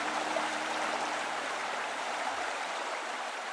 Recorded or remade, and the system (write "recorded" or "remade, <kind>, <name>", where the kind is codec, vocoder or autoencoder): remade, vocoder, BigVGAN v2